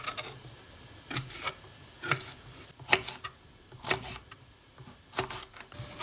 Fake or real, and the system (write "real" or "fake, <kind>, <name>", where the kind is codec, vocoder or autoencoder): real